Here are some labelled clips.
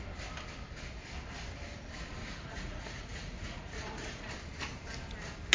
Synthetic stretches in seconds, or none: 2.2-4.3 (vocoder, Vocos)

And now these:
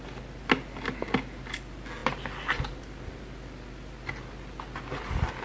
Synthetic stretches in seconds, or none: none

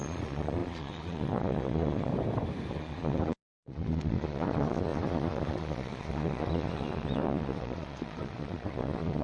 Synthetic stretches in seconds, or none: 0.0-2.1 (vocoder, Vocos); 2.7-9.2

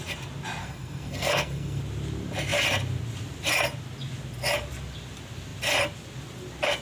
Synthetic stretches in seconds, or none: 0.6-1.8 (codec, SNAC)

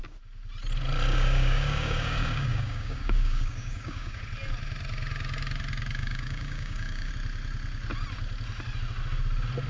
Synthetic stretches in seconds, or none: 1.1-4.2 (codec, DAC); 6.0-7.1